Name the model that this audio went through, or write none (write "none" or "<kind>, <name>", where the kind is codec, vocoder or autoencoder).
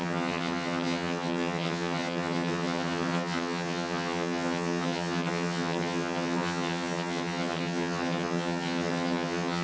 vocoder, HiFi-GAN